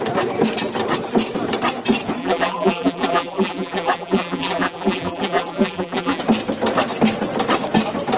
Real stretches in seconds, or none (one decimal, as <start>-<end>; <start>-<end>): 0.0-2.2; 6.2-8.2